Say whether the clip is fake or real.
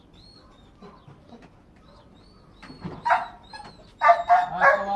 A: real